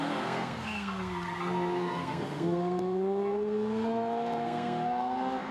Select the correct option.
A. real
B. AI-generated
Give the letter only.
B